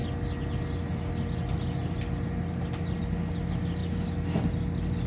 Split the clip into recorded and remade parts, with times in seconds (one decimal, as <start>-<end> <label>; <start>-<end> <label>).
0.0-5.1 recorded